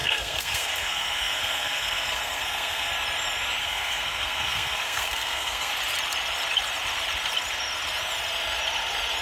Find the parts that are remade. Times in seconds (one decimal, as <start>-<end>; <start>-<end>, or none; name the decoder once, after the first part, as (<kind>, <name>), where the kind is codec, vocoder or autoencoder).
0.0-2.9 (codec, SNAC); 3.6-5.7